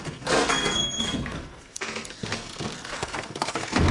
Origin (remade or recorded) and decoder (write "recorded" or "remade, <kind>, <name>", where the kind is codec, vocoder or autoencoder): remade, codec, SNAC